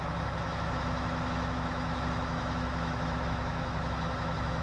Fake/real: fake